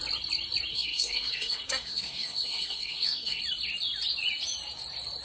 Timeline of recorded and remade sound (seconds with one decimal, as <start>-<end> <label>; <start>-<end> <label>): 0.0-0.7 recorded; 0.7-3.4 remade; 3.4-5.2 recorded